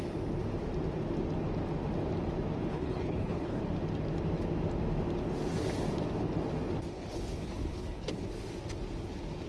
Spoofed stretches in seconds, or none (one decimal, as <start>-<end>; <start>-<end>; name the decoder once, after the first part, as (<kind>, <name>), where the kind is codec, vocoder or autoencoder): 2.7-3.6 (codec, HILCodec); 6.9-8.3